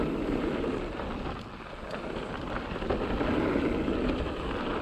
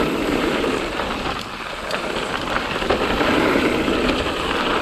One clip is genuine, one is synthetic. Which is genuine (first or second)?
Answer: first